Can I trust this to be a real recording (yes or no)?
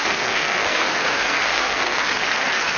no